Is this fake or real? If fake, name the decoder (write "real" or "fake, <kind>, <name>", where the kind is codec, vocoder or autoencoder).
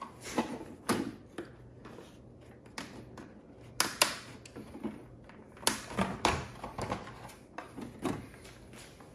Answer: real